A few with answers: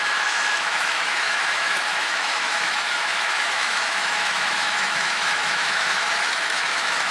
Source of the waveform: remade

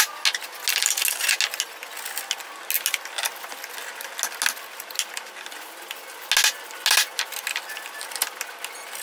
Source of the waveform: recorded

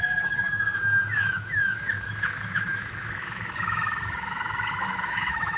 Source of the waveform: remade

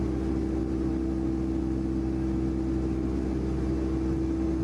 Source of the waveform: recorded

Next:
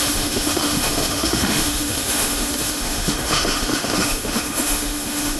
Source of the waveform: remade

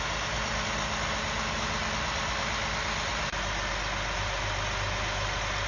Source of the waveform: recorded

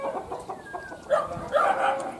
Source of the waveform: recorded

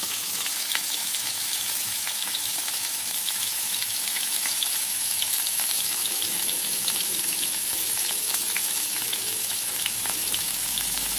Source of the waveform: remade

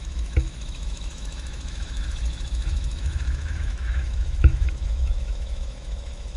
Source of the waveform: remade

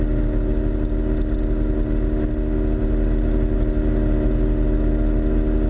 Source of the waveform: recorded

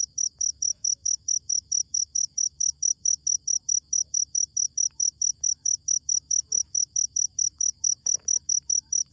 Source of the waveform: remade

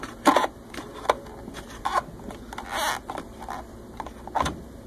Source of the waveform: recorded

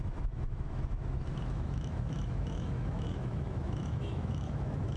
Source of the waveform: remade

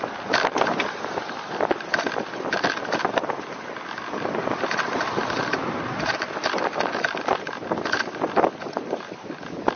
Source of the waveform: recorded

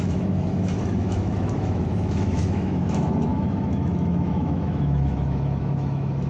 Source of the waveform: remade